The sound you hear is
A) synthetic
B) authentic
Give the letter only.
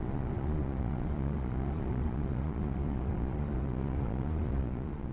A